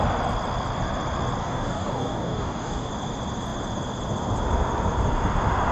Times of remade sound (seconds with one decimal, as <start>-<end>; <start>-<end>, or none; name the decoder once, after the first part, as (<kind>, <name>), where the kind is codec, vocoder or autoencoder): 1.4-2.9 (codec, DAC)